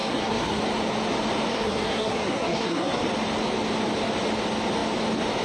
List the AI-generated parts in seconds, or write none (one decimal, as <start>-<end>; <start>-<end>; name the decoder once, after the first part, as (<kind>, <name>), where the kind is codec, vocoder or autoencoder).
0.0-0.6 (codec, SNAC); 1.5-3.0